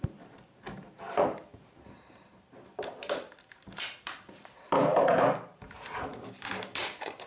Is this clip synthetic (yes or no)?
yes